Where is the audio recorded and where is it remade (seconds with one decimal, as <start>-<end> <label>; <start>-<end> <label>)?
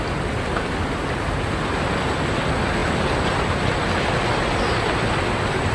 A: 0.0-5.7 recorded